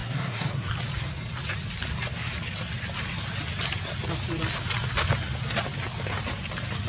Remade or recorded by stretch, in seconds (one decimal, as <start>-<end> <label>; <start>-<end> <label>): 0.0-0.7 remade; 0.7-6.9 recorded